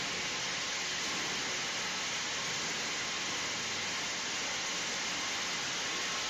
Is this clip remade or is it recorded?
recorded